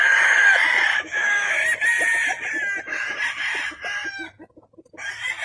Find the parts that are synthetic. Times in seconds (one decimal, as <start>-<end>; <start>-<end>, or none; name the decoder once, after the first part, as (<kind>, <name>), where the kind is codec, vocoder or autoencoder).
0.9-1.5 (autoencoder, DAC-VAE)